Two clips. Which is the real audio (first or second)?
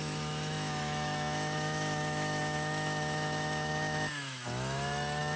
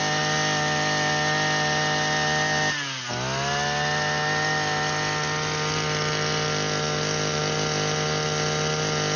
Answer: second